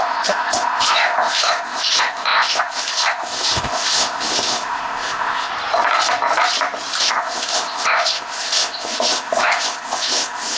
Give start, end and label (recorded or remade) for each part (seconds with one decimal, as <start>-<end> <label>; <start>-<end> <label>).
0.0-5.5 remade; 5.5-7.0 recorded; 7.0-10.6 remade